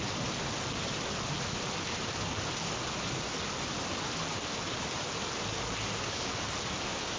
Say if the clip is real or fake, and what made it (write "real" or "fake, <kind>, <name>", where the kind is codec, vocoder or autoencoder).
real